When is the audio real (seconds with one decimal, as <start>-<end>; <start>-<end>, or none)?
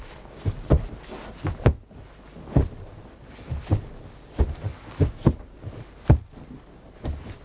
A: 0.0-7.4